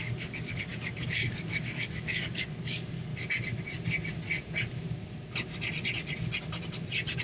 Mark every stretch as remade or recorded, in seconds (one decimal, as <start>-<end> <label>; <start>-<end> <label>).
0.0-3.1 remade; 3.1-7.2 recorded